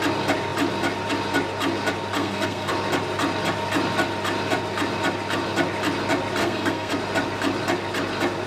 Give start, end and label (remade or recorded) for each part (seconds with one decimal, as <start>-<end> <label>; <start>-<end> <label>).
0.0-2.2 recorded; 2.2-2.7 remade; 2.7-6.4 recorded; 6.4-6.9 remade; 6.9-8.5 recorded